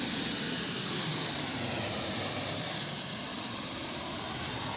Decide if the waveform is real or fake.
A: real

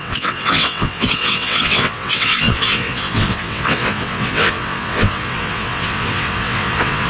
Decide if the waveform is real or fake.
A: fake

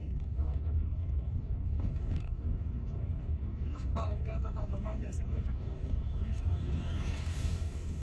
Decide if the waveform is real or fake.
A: fake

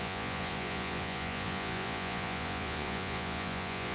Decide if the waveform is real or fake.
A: fake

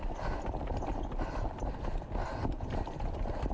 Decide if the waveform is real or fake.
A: real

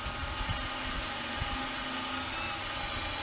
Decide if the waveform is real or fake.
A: real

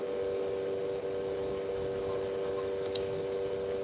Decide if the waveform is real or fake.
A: real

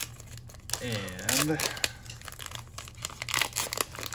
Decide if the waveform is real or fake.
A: real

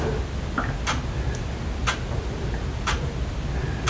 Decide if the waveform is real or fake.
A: real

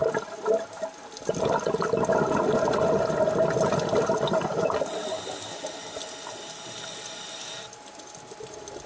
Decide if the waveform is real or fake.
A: real